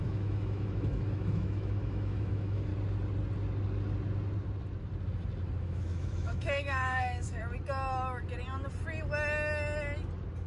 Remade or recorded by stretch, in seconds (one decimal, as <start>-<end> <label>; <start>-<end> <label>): 0.0-2.7 remade; 2.7-5.6 recorded; 5.6-7.4 remade; 7.4-10.5 recorded